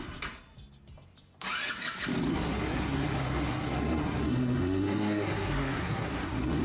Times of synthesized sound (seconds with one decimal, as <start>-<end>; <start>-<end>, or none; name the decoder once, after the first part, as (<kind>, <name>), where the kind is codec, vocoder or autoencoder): 2.3-6.6 (codec, SNAC)